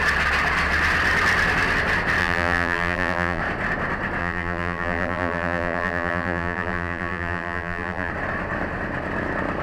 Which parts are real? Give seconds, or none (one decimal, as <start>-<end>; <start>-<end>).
0.0-2.2; 3.4-4.2; 8.1-9.6